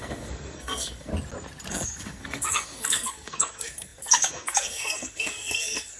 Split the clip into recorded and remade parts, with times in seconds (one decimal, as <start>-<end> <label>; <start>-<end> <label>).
0.0-1.1 remade; 1.1-1.7 recorded; 1.7-6.0 remade